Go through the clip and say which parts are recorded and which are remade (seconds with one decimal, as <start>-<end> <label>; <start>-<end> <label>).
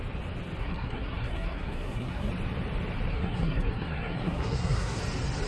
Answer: 0.0-0.6 recorded; 0.6-2.3 remade; 2.3-3.1 recorded; 3.1-5.0 remade; 5.0-5.5 recorded